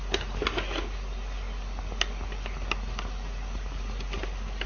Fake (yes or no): no